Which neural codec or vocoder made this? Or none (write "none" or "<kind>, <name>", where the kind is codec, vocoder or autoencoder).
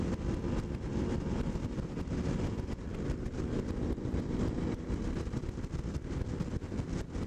none